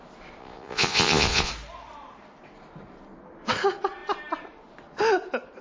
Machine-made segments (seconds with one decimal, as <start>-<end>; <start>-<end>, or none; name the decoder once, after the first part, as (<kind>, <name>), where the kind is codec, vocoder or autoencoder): 0.4-1.5 (vocoder, Vocos)

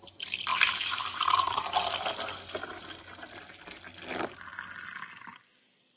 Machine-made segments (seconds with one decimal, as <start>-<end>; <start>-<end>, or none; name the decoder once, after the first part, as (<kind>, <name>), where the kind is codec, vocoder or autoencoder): 0.5-1.6 (vocoder, BigVGAN v2)

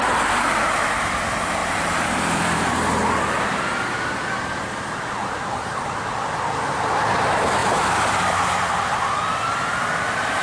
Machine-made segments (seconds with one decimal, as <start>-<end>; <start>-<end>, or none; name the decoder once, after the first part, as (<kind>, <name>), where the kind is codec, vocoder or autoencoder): 1.6-2.7 (vocoder, BigVGAN v2); 7.6-8.7